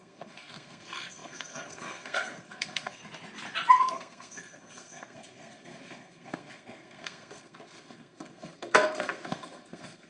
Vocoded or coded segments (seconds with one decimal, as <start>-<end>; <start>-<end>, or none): 0.0-3.0; 3.8-10.1